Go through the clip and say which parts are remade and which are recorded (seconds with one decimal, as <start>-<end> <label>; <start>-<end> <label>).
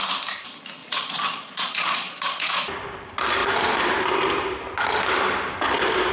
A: 0.0-0.8 recorded; 0.8-2.6 remade; 2.6-6.1 recorded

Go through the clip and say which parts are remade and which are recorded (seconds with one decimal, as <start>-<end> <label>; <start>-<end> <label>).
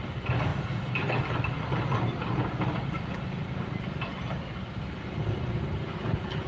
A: 0.0-6.5 recorded